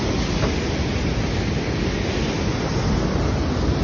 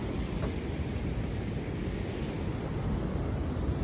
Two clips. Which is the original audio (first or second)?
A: first